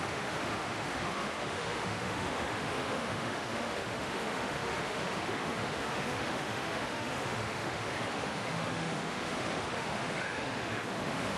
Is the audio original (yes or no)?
no